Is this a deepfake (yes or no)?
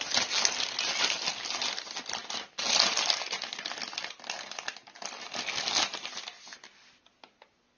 no